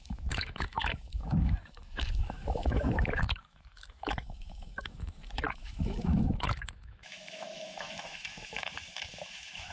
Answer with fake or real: fake